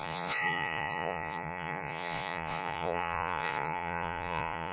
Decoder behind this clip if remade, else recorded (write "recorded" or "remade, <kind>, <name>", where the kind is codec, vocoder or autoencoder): remade, vocoder, Vocos